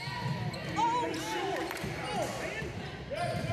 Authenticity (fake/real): real